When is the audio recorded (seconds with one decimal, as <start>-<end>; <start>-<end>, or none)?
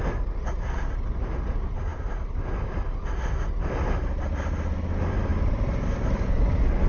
0.0-5.3; 5.9-6.9